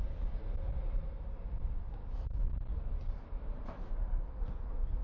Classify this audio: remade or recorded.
recorded